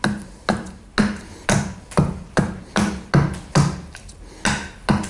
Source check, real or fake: real